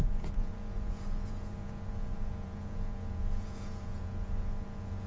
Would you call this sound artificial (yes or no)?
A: yes